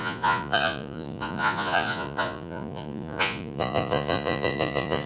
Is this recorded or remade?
remade